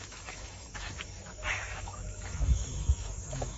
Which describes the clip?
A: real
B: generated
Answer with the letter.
B